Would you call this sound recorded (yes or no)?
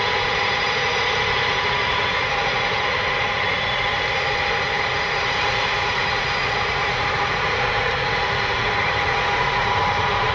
no